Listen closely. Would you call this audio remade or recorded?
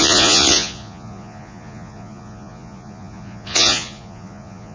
remade